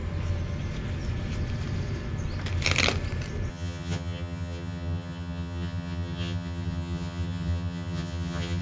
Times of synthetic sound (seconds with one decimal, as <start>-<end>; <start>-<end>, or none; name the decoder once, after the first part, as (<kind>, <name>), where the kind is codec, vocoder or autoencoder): 3.5-8.6 (vocoder, HiFi-GAN)